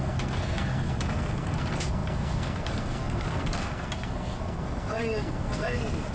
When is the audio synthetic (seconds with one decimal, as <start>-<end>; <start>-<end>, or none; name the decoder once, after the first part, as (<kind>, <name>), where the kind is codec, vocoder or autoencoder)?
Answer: 0.0-6.1 (codec, SNAC)